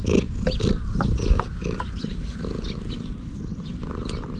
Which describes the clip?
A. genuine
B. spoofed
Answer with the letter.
A